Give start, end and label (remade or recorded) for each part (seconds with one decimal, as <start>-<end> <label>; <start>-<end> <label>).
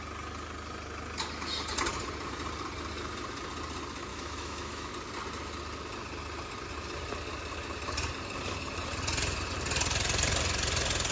0.0-4.1 recorded; 4.1-4.9 remade; 4.9-11.1 recorded